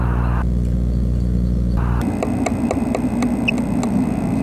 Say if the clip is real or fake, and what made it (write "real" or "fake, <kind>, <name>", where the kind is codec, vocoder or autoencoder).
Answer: real